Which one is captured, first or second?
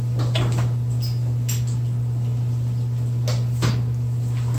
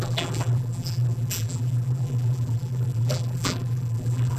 first